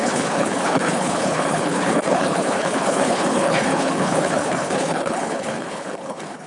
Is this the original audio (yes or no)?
no